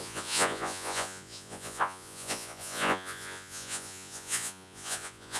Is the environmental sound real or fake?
fake